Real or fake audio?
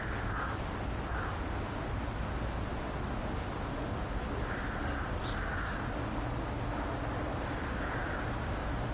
real